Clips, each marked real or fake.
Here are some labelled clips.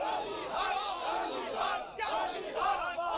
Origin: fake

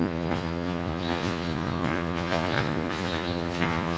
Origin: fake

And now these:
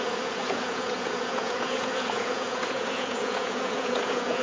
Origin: fake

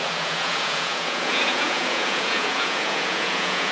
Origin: fake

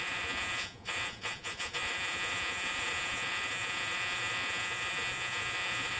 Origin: fake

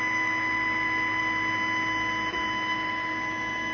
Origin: real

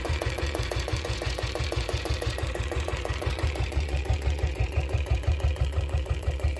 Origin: fake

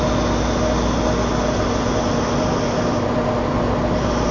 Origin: real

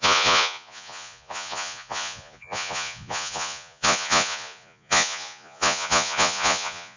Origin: fake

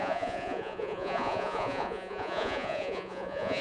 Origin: fake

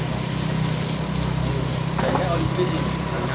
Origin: real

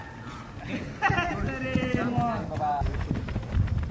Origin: real